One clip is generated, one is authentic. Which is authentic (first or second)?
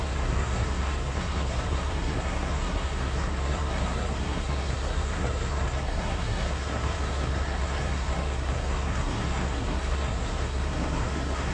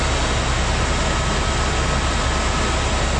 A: second